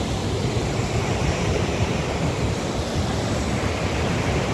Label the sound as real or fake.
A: fake